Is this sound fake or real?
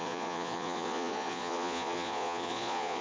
fake